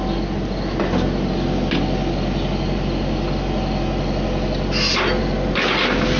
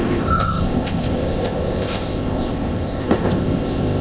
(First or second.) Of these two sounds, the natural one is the first